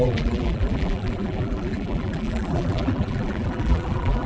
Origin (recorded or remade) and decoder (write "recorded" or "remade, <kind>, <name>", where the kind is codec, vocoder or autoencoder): remade, vocoder, BigVGAN v2